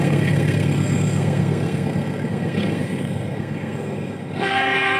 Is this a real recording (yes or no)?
no